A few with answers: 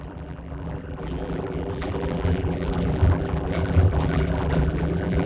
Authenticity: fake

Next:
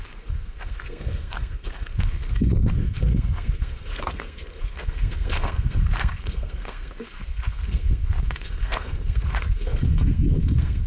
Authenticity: fake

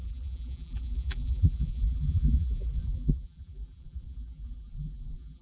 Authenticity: fake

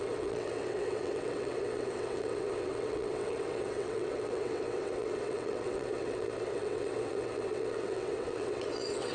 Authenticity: fake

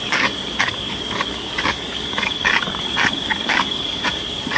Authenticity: fake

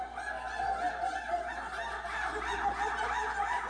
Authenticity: real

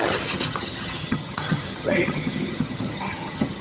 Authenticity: fake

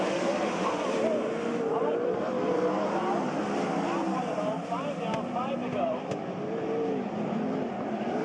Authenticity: fake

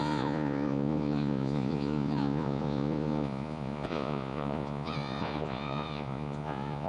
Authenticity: fake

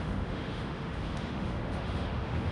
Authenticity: fake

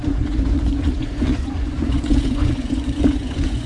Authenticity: fake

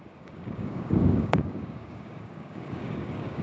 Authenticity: fake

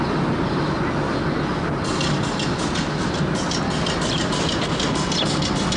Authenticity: real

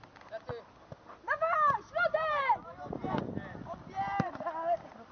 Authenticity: real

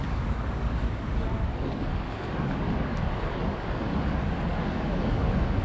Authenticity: fake